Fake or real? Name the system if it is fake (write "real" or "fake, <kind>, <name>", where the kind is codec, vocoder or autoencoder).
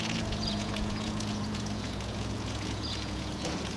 fake, vocoder, Vocos